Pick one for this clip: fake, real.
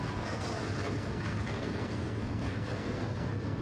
fake